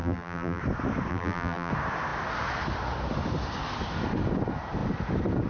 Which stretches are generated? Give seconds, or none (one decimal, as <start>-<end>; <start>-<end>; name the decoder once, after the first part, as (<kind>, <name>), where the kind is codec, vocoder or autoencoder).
0.0-0.6 (vocoder, BigVGAN v2); 1.1-1.7